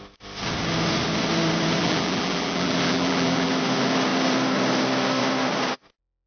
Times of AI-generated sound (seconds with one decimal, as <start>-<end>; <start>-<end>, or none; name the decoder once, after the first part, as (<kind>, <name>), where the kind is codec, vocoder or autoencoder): 1.8-3.5 (vocoder, BigVGAN v2)